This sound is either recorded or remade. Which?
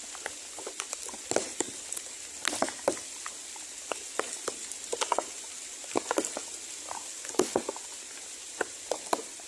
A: recorded